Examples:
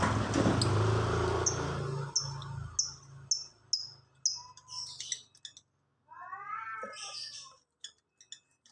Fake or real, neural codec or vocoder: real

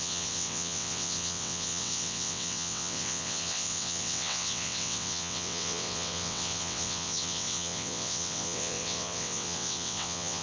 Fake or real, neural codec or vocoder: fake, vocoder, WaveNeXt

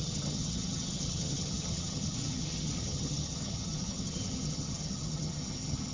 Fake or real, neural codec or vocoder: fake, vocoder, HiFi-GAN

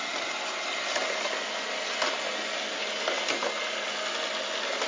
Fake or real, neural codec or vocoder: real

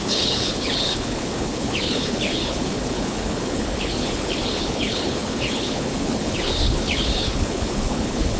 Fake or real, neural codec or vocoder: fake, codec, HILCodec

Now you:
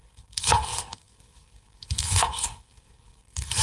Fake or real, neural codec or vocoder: fake, codec, SNAC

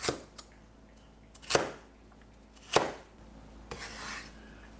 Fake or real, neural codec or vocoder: real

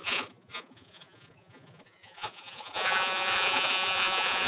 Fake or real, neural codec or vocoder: fake, vocoder, Vocos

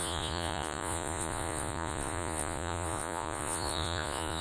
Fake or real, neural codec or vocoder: fake, vocoder, Vocos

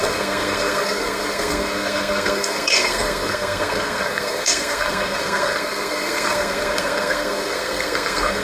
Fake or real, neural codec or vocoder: fake, codec, SNAC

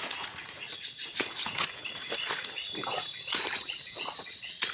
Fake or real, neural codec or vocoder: fake, vocoder, Vocos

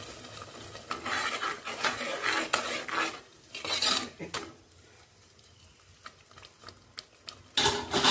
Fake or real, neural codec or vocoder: real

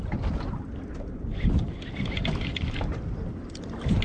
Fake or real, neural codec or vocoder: real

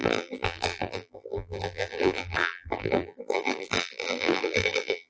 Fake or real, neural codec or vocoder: fake, vocoder, BigVGAN v2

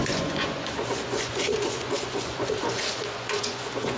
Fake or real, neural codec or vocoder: fake, vocoder, Vocos